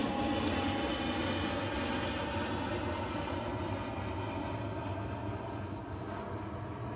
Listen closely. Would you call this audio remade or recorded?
recorded